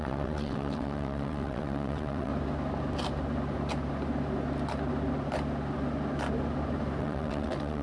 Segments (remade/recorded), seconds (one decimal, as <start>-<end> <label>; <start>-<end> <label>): 0.0-2.3 remade; 2.3-7.0 recorded; 7.0-7.8 remade